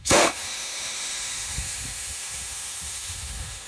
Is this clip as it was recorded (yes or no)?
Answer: no